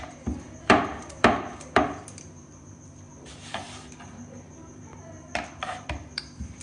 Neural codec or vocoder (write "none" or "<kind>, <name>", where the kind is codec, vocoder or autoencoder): vocoder, BigVGAN v2